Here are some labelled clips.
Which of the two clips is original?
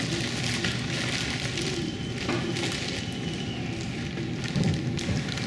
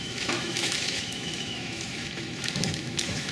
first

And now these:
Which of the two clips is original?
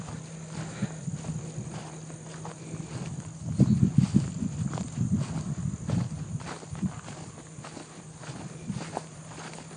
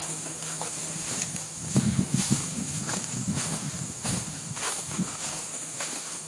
first